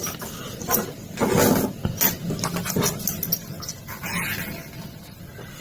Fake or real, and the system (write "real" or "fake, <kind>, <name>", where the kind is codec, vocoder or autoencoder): real